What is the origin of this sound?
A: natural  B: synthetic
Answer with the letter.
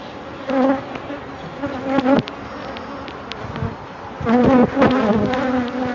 A